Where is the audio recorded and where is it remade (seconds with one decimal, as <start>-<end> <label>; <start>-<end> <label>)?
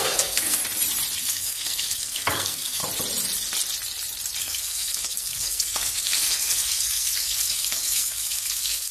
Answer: 0.0-0.6 remade; 0.6-1.2 recorded; 1.2-2.8 remade; 2.8-4.4 recorded; 4.4-8.9 remade